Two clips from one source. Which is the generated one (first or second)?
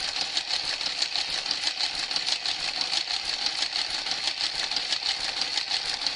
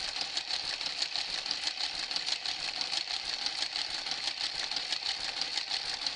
second